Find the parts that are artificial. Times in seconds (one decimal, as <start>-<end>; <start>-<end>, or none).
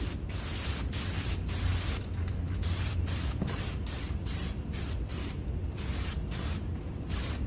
none